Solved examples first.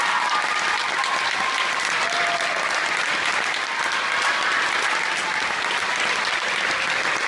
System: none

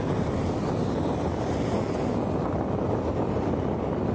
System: none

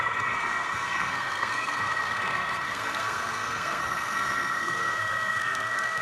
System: codec, SNAC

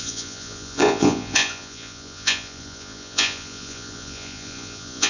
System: vocoder, Vocos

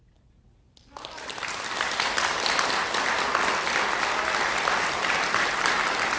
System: none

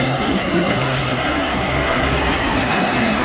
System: codec, SNAC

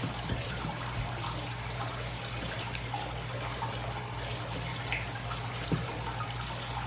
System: none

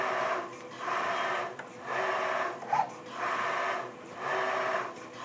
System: none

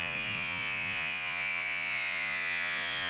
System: vocoder, Vocos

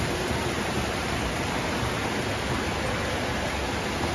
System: none